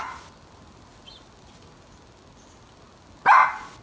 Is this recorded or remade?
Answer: recorded